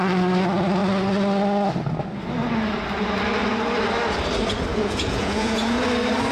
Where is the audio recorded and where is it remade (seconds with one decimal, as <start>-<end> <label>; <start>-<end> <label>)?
0.0-4.7 recorded; 4.7-5.8 remade; 5.8-6.3 recorded